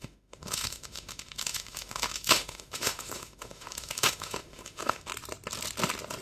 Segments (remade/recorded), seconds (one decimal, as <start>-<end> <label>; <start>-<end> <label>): 0.0-5.1 remade; 5.1-6.2 recorded